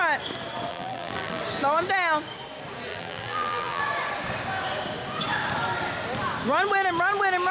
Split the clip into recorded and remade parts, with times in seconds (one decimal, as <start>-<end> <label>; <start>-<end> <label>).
0.0-0.7 recorded; 0.7-1.4 remade; 1.4-2.9 recorded; 2.9-3.8 remade; 3.8-7.5 recorded